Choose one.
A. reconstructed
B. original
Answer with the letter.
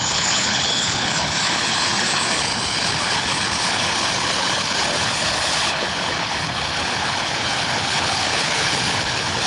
A